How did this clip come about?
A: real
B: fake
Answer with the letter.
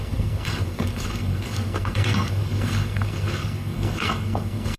B